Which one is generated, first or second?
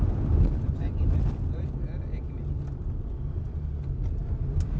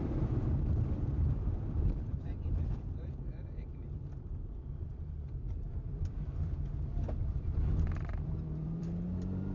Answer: second